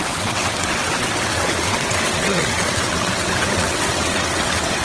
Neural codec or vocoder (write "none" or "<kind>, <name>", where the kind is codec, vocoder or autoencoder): vocoder, WaveNeXt